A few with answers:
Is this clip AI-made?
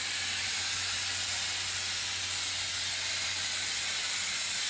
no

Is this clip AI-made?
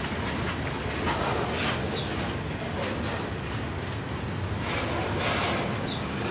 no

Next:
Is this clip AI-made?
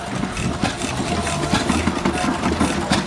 no